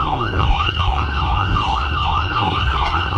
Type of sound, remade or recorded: remade